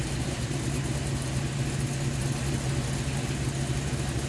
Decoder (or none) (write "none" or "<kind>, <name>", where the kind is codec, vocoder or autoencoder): none